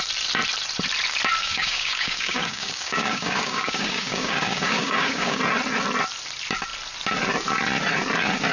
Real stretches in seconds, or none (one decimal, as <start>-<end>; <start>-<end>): 0.0-1.4; 5.4-8.5